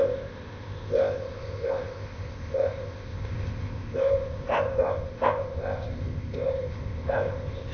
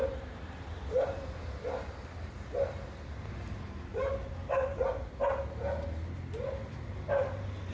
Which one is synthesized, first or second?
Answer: first